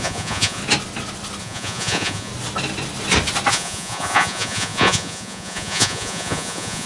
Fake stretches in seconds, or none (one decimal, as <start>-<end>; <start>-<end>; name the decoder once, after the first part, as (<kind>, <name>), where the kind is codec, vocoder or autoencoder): 0.0-0.6 (vocoder, Vocos); 1.4-2.3; 3.5-6.9